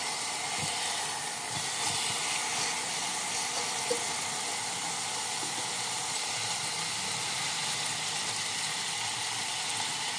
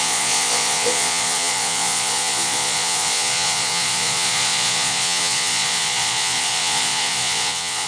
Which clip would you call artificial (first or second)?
second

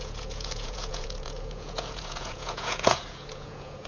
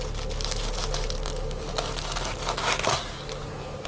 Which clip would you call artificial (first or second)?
first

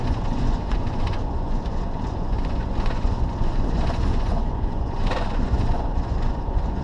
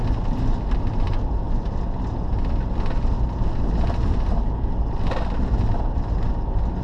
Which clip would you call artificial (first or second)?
first